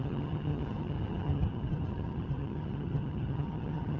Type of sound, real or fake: fake